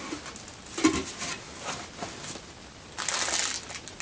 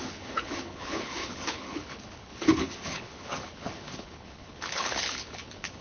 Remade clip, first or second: second